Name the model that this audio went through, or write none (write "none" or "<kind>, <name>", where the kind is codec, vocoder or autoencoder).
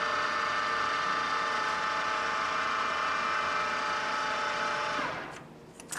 none